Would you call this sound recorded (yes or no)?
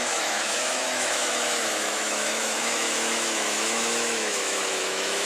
no